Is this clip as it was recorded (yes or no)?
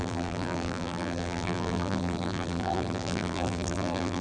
no